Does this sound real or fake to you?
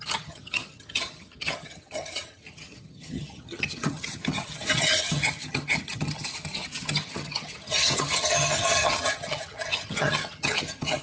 fake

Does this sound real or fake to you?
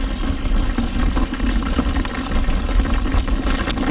real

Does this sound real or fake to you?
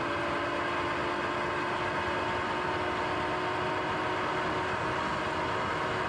real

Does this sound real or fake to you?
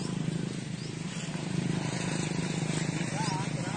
real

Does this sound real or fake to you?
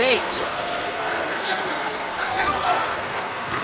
fake